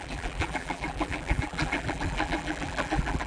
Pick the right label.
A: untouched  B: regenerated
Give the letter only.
B